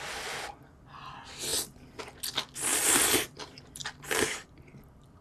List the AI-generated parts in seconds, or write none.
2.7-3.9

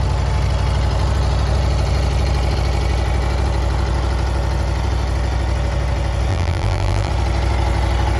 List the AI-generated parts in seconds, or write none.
6.3-7.1